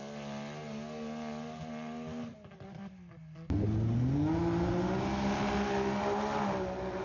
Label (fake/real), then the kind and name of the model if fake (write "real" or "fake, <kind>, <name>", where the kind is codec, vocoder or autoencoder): real